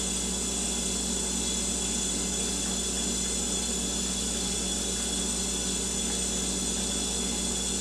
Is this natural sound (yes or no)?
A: yes